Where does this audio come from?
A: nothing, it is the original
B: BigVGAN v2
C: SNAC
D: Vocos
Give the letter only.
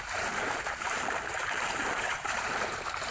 B